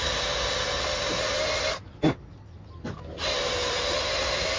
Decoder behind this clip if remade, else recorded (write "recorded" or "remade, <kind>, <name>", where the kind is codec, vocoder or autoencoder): recorded